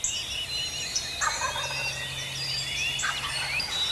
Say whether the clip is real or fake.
real